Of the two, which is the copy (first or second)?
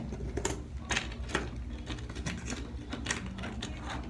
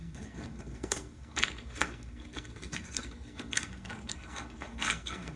second